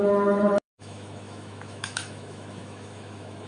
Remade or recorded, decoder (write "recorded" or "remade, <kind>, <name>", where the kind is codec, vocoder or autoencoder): remade, autoencoder, DAC-VAE